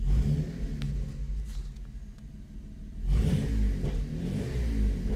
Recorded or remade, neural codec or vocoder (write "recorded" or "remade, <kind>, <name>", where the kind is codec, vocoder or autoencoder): recorded